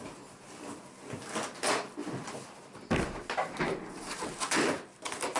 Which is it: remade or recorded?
recorded